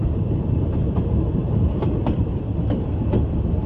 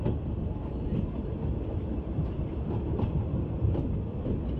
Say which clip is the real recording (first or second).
second